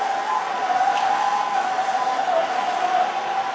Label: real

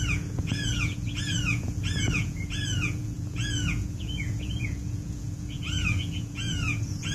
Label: fake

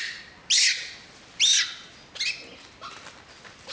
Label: real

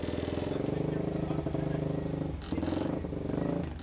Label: real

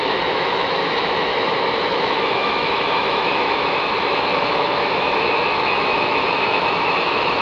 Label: fake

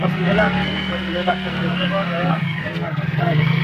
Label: fake